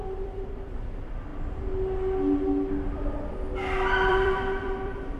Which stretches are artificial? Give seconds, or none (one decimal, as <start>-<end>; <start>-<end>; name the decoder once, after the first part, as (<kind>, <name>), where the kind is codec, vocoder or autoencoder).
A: 0.0-1.3 (vocoder, BigVGAN v2); 4.1-5.2